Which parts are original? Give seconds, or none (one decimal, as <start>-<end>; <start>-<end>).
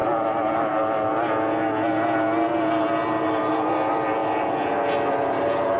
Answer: 0.0-5.8